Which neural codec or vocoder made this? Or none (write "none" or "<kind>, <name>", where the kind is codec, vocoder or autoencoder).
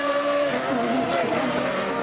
none